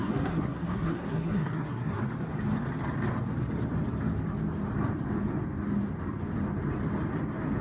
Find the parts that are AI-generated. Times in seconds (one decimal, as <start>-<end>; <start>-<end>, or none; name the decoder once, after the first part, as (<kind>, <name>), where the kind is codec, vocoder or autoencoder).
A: 0.0-2.0 (codec, SNAC)